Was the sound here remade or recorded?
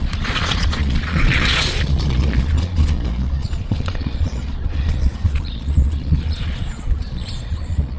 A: remade